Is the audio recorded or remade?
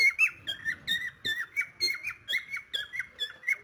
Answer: recorded